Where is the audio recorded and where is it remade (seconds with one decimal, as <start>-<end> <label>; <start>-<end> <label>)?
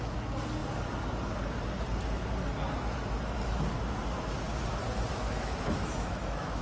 0.0-5.1 recorded; 5.1-6.6 remade